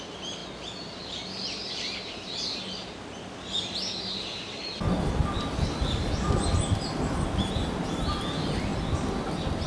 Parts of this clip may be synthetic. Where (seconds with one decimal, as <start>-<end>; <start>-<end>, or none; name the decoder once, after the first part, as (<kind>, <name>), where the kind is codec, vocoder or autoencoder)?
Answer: none